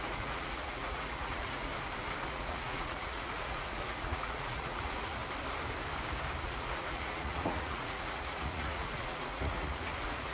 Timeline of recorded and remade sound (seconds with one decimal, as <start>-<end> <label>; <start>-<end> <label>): 0.0-1.7 remade; 1.7-2.3 recorded; 2.3-5.2 remade; 5.2-6.4 recorded; 6.4-10.3 remade